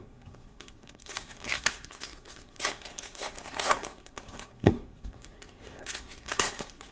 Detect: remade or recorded remade